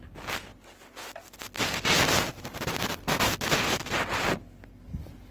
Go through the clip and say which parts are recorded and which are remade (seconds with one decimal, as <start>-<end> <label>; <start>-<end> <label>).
0.0-0.5 recorded; 0.5-3.7 remade; 3.7-5.3 recorded